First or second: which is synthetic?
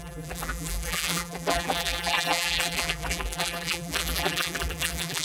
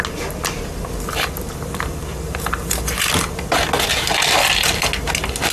first